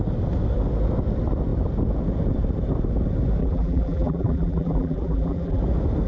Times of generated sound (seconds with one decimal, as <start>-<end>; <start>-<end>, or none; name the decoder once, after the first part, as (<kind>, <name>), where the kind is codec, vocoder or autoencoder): 3.4-5.6 (vocoder, BigVGAN v2)